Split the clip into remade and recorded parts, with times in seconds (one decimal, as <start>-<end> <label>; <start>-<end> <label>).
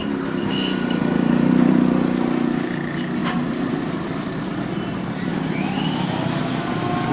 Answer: 0.0-3.2 recorded; 3.2-3.9 remade; 3.9-5.3 recorded; 5.3-6.4 remade; 6.4-7.1 recorded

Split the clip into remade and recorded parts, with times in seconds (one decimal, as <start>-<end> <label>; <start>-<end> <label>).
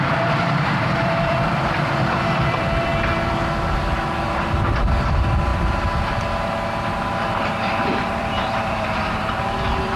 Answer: 0.0-5.5 remade; 5.5-6.9 recorded; 6.9-10.0 remade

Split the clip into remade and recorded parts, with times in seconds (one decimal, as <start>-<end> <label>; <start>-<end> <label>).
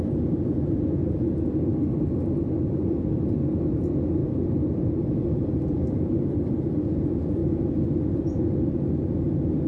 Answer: 0.0-4.2 recorded; 4.2-6.8 remade; 6.8-9.7 recorded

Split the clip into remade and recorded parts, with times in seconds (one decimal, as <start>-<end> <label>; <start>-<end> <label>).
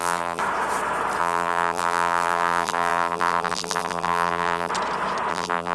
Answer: 0.0-0.4 remade; 0.4-1.2 recorded; 1.2-4.7 remade; 4.7-5.3 recorded; 5.3-5.7 remade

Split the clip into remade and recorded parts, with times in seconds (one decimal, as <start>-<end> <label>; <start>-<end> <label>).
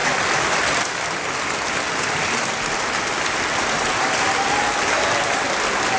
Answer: 0.0-6.0 recorded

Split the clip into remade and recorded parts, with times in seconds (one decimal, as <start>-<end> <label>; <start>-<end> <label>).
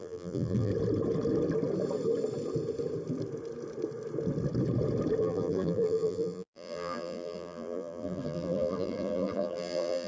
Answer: 0.0-0.7 remade; 0.7-5.2 recorded; 5.2-10.1 remade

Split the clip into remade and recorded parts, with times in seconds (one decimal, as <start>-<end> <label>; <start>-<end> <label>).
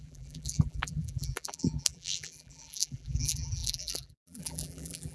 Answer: 0.0-5.1 remade